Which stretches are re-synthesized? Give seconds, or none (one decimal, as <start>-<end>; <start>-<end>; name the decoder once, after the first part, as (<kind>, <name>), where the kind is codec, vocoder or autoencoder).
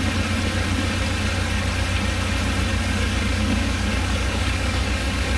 2.7-5.4 (codec, DAC)